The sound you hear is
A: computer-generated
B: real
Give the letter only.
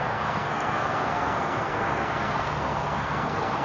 A